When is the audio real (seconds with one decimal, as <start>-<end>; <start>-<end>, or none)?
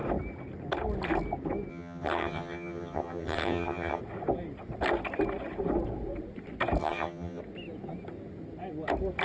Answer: 0.0-1.7; 4.0-6.8; 7.4-9.2